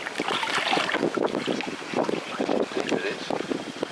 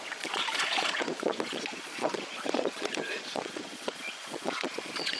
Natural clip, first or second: first